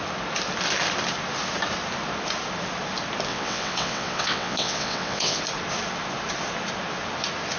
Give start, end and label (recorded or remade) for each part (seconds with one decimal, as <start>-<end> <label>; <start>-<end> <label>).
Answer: 0.0-3.3 recorded; 3.3-5.4 remade; 5.4-7.6 recorded